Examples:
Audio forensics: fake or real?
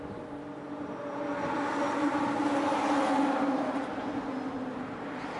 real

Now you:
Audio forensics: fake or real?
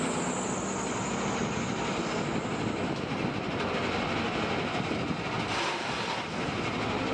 real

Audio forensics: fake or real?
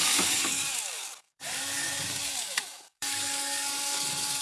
fake